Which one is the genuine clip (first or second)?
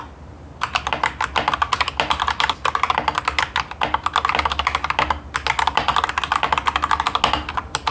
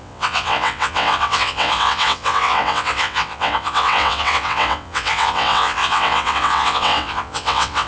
first